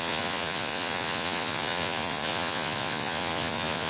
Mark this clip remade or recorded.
remade